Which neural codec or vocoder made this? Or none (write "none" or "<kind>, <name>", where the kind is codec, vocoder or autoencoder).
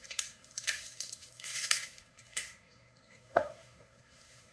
codec, SNAC